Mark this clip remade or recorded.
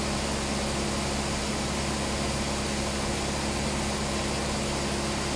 recorded